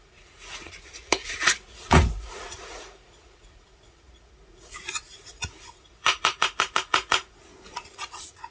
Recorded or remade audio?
remade